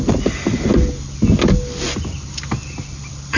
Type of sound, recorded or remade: recorded